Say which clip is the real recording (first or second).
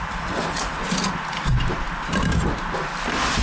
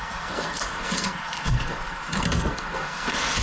first